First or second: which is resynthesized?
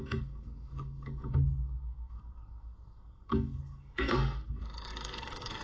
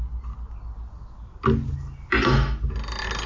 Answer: first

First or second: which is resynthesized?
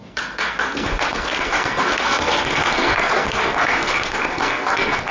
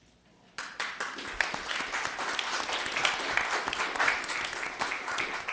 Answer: first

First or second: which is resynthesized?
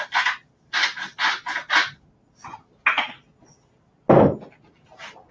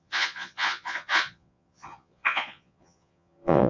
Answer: second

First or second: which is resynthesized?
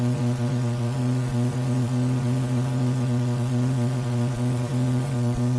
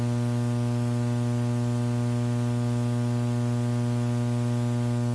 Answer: first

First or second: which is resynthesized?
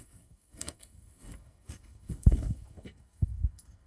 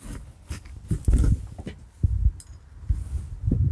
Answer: first